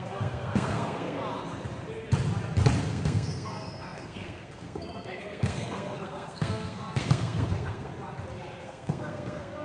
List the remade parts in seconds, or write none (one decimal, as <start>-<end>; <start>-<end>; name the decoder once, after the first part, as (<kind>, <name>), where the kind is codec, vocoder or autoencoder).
0.0-1.2 (codec, SNAC); 2.8-7.9; 8.6-9.6